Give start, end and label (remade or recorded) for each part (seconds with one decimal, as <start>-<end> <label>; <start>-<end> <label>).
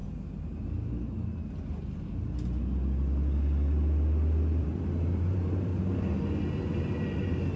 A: 0.0-4.6 recorded; 4.6-5.7 remade; 5.7-6.7 recorded; 6.7-7.6 remade